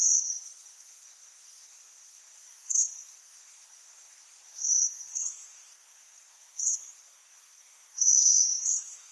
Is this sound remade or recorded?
remade